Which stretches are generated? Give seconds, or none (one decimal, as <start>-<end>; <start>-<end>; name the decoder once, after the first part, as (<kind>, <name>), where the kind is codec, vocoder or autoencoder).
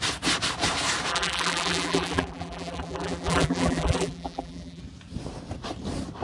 1.1-4.8 (vocoder, BigVGAN v2)